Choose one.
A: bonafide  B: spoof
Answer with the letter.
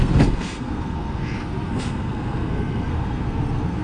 B